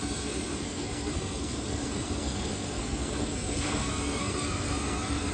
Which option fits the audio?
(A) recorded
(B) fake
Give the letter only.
B